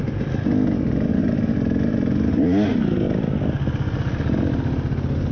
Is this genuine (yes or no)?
yes